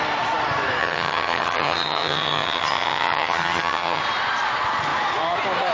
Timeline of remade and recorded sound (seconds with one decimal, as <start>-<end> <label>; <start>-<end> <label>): 0.0-0.8 recorded; 0.8-4.0 remade; 4.0-5.7 recorded